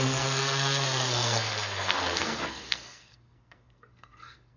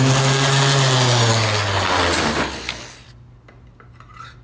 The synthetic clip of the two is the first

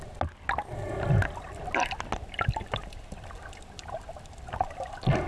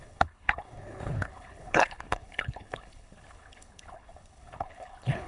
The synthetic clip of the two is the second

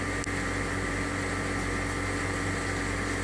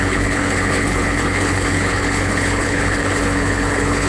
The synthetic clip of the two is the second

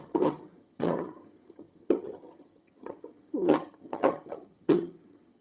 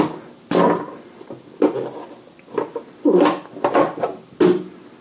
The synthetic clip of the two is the first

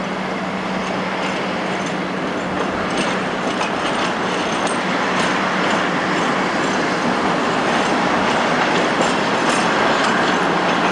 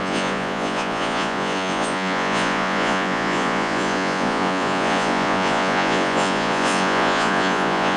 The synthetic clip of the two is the second